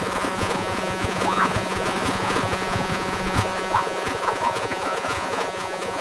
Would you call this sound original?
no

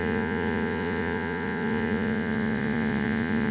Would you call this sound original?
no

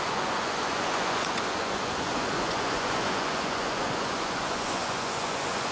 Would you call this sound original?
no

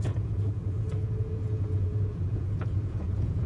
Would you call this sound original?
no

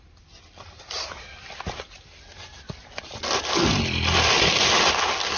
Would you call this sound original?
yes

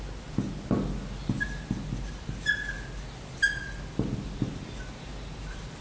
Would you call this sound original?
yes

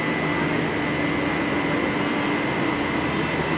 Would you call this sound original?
yes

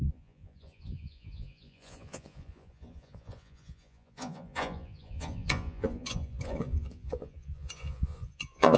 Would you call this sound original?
no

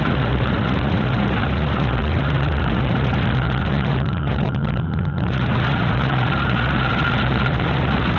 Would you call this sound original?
no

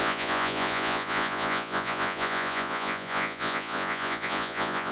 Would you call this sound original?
no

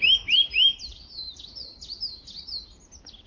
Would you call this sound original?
yes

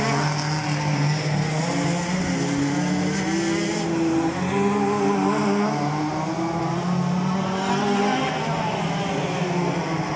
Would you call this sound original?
yes